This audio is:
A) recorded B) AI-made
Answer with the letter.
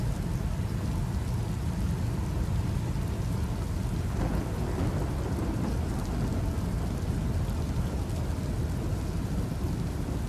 A